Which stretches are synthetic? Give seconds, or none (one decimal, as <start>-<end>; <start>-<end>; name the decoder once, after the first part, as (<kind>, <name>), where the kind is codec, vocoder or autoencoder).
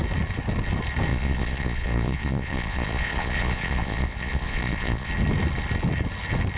1.1-5.1 (vocoder, Vocos)